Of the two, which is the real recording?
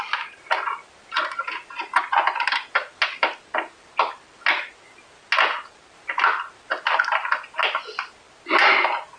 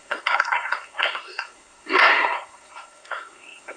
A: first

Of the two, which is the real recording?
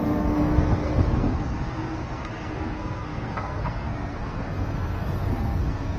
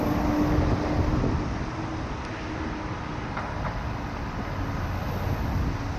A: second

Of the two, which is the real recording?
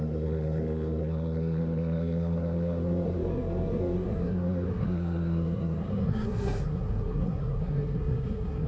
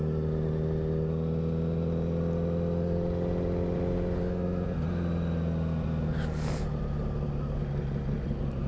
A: second